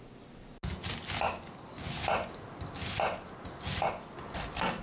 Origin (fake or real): real